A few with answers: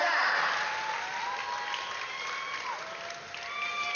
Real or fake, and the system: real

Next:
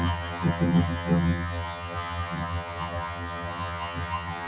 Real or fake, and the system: fake, vocoder, HiFi-GAN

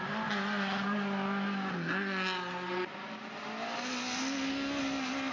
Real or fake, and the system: real